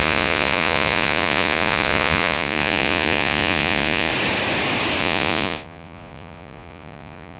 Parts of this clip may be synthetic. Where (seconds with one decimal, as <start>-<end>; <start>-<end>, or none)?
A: 0.0-4.1; 5.0-7.4